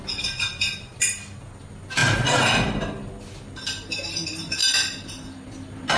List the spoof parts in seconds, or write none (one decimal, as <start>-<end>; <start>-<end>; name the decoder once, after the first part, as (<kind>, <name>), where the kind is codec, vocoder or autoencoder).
none